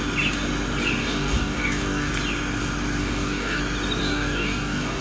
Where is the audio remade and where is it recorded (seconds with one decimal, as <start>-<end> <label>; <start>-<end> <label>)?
0.0-1.0 recorded; 1.0-2.1 remade; 2.1-3.0 recorded; 3.0-3.6 remade; 3.6-4.0 recorded; 4.0-5.0 remade